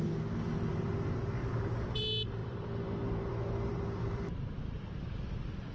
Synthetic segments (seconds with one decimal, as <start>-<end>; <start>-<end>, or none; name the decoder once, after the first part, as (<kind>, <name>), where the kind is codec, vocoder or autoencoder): 1.4-2.0 (vocoder, BigVGAN v2); 2.4-3.3; 3.7-4.6